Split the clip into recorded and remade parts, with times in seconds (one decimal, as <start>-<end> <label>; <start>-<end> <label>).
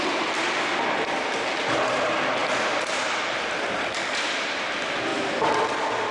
0.0-6.1 recorded